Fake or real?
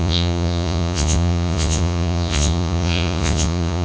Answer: fake